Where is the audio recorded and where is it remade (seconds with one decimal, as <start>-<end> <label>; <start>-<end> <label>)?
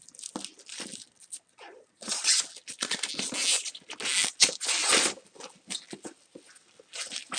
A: 0.0-1.5 recorded; 1.5-2.3 remade; 2.3-7.4 recorded